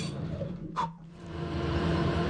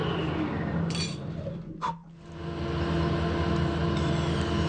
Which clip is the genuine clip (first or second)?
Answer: second